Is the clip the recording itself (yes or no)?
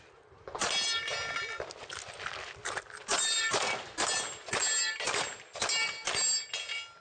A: yes